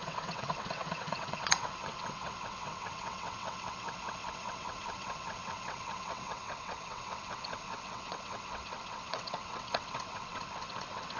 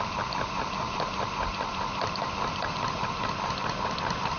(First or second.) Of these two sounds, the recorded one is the second